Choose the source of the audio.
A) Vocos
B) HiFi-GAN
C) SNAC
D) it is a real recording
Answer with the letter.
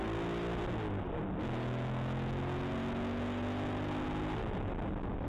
D